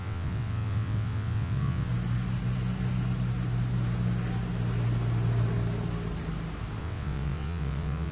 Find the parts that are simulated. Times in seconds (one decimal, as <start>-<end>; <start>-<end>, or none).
0.0-1.9; 6.8-8.1